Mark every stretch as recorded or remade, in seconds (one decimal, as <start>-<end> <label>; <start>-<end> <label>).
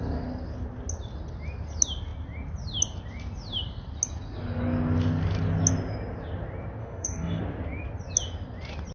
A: 0.0-6.8 recorded; 6.8-7.4 remade; 7.4-8.9 recorded